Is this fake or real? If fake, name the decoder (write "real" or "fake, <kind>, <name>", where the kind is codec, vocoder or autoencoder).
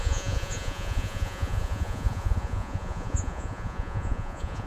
fake, vocoder, Vocos